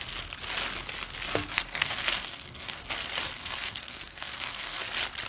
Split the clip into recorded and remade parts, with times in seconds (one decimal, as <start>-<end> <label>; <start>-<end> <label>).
0.0-1.3 recorded; 1.3-2.8 remade; 2.8-3.3 recorded; 3.3-4.8 remade; 4.8-5.3 recorded

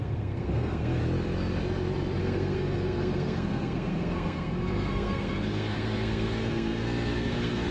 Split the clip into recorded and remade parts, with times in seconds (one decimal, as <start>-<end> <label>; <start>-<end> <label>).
0.0-1.0 remade; 1.0-2.2 recorded; 2.2-7.7 remade

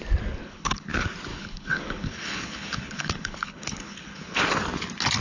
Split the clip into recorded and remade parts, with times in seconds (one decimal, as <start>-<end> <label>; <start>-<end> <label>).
0.0-0.4 recorded; 0.4-0.9 remade; 0.9-1.3 recorded; 1.3-4.4 remade; 4.4-5.2 recorded

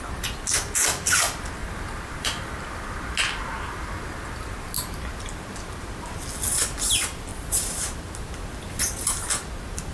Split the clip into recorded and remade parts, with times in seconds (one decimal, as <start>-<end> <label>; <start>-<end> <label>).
0.0-1.6 recorded; 1.6-2.5 remade; 2.5-7.3 recorded; 7.3-8.4 remade; 8.4-9.9 recorded